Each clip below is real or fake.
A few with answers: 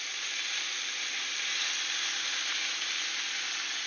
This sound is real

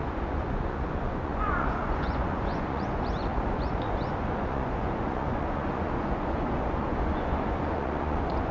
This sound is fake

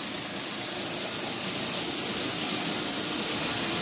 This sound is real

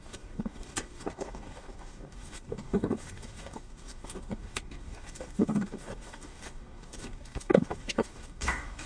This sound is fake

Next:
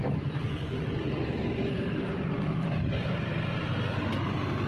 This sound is real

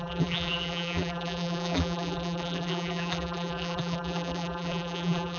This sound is fake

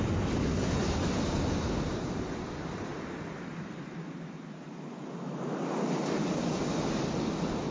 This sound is real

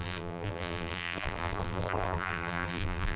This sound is fake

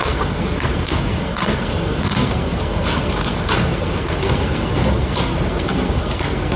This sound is fake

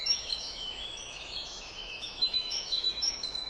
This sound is fake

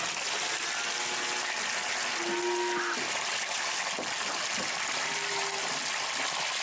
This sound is real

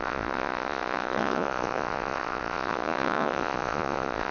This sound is fake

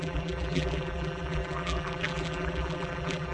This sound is fake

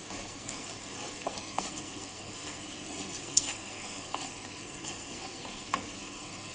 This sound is fake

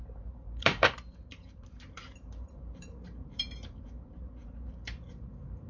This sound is fake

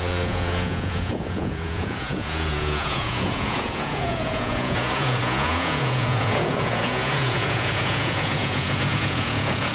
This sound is fake